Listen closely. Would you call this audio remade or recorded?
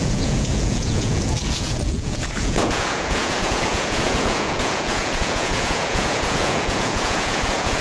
remade